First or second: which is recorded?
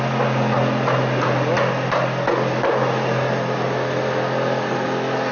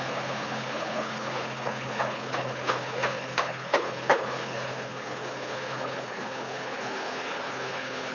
first